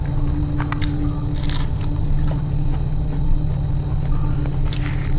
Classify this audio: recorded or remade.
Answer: recorded